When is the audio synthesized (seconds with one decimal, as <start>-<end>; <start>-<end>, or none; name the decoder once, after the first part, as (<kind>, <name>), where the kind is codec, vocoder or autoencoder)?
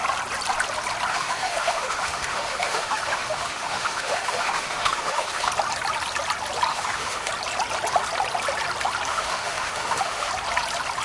1.1-5.5 (autoencoder, DAC-VAE); 6.7-7.3; 9.1-10.3